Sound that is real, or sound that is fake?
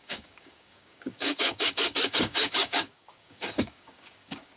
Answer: fake